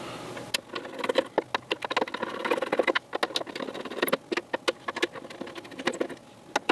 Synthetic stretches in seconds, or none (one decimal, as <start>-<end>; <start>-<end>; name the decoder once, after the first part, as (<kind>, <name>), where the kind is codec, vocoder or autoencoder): none